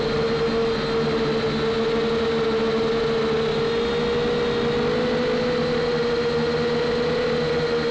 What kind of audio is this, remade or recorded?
recorded